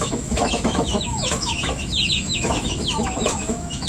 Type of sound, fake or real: fake